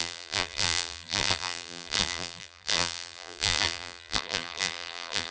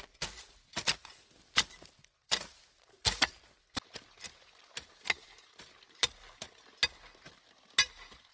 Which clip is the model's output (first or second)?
first